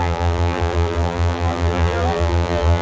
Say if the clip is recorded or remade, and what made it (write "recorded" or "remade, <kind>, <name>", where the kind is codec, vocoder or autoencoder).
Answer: remade, vocoder, BigVGAN v2